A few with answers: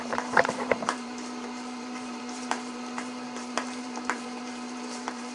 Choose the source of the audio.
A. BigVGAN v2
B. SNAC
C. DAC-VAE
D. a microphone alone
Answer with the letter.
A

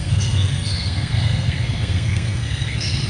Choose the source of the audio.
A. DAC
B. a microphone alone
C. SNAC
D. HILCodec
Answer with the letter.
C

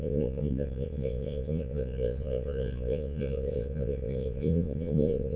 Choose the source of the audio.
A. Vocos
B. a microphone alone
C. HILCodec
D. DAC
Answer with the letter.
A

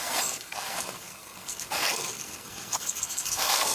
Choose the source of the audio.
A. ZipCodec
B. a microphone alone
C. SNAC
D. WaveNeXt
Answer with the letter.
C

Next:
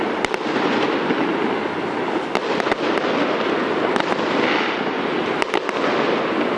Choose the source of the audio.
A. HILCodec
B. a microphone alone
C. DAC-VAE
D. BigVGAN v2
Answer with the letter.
B